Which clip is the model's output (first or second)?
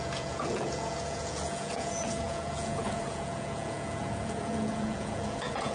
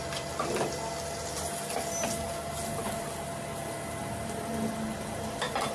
first